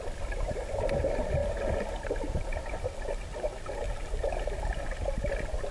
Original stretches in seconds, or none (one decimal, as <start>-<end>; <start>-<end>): 0.0-5.7